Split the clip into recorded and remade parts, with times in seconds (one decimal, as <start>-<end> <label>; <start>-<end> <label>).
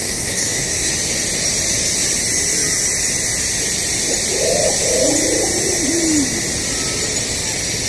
0.0-0.9 remade; 0.9-7.9 recorded